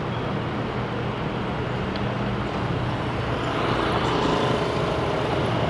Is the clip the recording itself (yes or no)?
yes